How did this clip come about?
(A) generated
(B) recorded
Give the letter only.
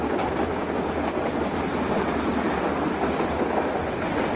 B